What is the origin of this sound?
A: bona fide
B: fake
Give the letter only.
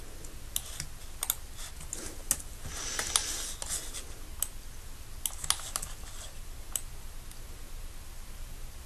A